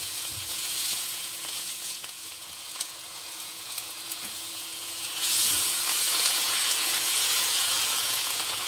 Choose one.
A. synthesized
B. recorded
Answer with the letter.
A